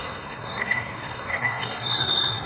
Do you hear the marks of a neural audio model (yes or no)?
yes